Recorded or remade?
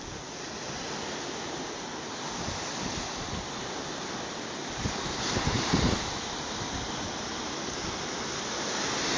recorded